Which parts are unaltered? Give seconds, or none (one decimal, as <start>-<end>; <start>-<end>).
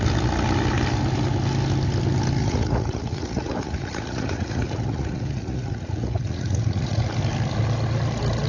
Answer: 0.0-2.4; 7.0-8.5